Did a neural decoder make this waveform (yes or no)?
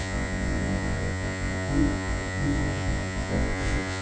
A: yes